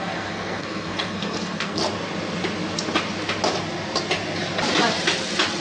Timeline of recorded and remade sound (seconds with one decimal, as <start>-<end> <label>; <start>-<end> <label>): 0.0-1.8 remade; 1.8-5.6 recorded